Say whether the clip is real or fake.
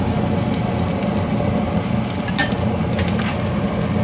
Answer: real